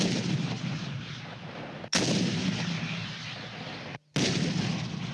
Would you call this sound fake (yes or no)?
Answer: no